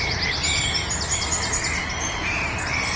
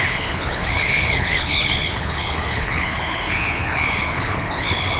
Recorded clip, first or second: first